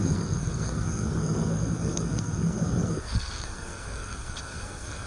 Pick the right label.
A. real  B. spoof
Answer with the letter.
B